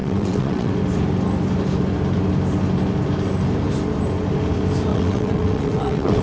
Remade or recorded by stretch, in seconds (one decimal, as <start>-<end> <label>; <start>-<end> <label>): 0.0-0.7 remade; 0.7-4.9 recorded; 4.9-6.2 remade